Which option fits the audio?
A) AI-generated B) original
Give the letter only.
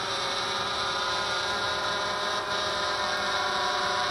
A